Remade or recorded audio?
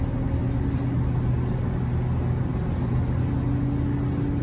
recorded